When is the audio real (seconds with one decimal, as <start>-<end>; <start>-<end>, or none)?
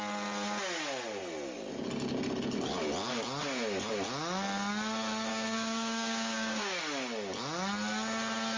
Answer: 0.0-5.3; 6.8-8.6